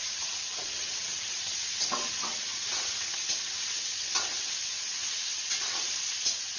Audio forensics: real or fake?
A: fake